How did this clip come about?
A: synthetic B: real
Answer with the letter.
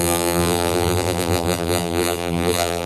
A